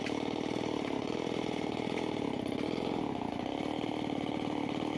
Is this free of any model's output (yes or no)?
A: yes